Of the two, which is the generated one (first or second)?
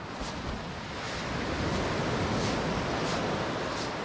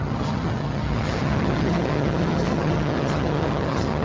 second